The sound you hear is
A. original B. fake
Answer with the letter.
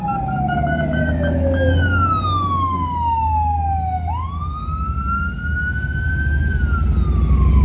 A